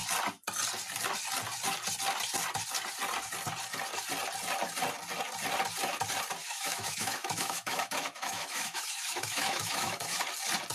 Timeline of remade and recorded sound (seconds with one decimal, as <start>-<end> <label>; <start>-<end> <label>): 0.0-6.4 recorded; 6.4-10.2 remade; 10.2-10.7 recorded